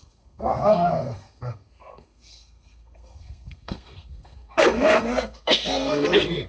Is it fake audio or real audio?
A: fake